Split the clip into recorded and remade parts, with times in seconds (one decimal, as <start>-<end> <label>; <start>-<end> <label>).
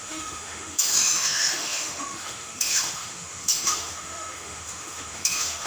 0.0-5.7 remade